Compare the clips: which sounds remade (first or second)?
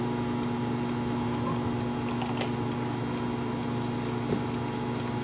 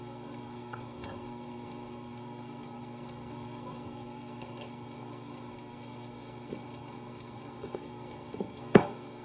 second